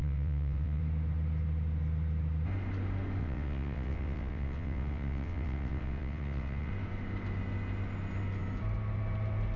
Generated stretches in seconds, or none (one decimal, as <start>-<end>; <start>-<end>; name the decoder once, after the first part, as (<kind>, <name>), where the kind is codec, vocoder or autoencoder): 0.0-0.8 (vocoder, WaveNeXt); 3.2-6.7